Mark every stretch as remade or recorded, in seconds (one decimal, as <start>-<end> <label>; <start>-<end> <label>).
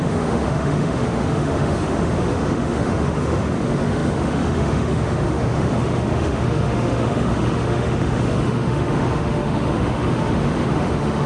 0.0-11.3 remade